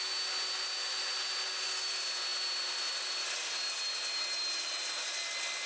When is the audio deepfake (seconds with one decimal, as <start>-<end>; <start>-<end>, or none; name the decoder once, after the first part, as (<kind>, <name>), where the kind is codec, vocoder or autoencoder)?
none